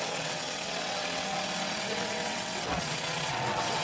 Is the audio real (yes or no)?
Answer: no